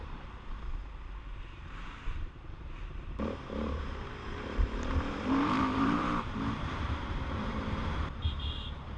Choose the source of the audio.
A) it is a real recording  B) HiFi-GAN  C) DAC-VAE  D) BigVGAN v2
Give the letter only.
D